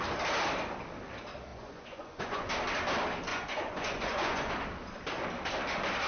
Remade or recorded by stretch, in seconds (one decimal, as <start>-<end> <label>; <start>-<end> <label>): 0.0-1.5 recorded; 1.5-2.5 remade; 2.5-3.3 recorded; 3.3-4.5 remade; 4.5-6.1 recorded